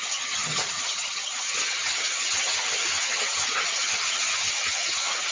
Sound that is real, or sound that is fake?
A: fake